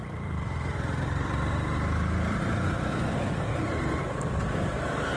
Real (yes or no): no